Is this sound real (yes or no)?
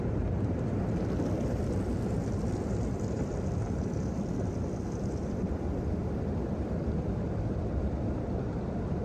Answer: no